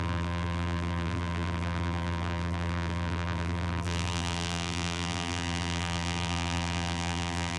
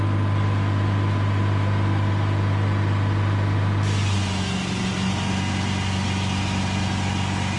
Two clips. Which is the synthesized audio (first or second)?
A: first